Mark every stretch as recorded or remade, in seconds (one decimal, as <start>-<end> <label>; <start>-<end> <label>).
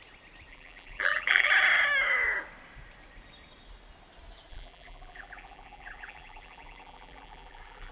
0.0-0.5 recorded; 0.5-1.5 remade; 1.5-4.5 recorded; 4.5-7.9 remade